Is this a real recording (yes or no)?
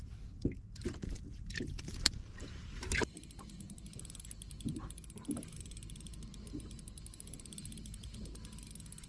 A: no